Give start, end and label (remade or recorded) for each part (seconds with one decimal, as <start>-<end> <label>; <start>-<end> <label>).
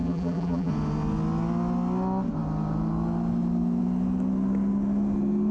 0.0-0.7 remade; 0.7-5.5 recorded